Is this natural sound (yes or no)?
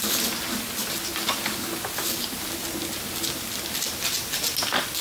yes